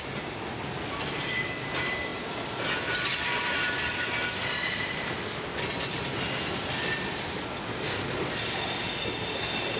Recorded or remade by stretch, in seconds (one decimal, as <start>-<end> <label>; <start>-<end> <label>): 0.0-9.8 recorded